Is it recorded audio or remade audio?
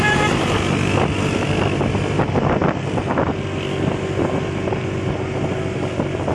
recorded